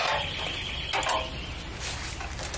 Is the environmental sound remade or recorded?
recorded